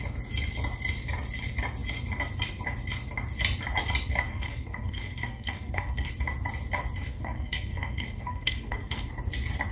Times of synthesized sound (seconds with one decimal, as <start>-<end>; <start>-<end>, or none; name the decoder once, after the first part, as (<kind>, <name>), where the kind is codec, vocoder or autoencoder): 4.3-6.1 (codec, SNAC); 7.1-9.1